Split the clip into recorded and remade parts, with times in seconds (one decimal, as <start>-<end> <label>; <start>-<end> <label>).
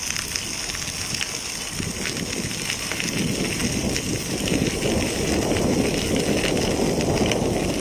0.0-7.8 recorded